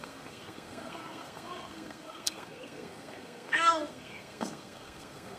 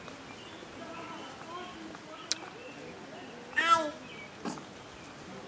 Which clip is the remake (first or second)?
first